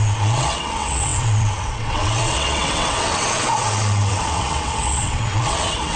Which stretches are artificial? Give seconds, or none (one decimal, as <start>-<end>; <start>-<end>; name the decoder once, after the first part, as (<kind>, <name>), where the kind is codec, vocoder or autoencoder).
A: 0.0-6.0 (vocoder, WaveNeXt)